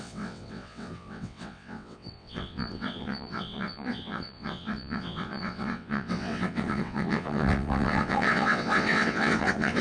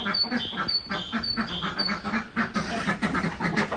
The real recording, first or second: second